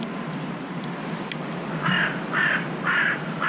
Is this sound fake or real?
real